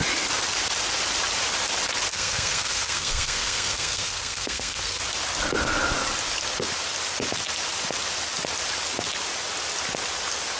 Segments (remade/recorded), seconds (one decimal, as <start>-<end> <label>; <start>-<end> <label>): 0.0-2.1 recorded; 2.1-5.0 remade; 5.0-10.6 recorded